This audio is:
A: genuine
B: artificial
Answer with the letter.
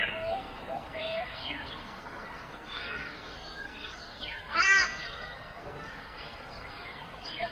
B